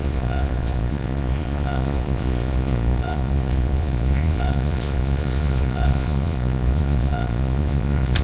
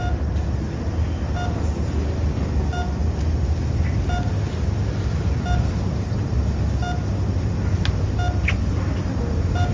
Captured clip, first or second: second